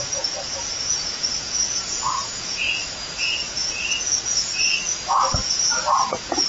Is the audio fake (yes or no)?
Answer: yes